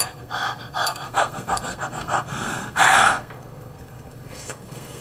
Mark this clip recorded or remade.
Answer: remade